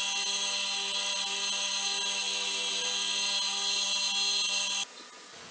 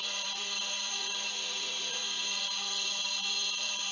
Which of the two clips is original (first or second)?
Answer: first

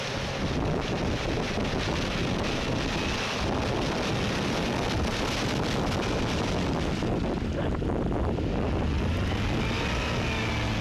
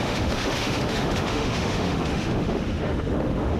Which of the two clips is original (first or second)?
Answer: first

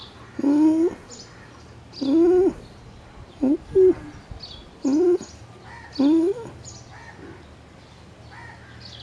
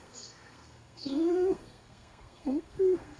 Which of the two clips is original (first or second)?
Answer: first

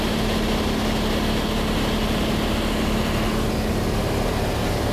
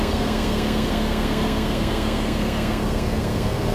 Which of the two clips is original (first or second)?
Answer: first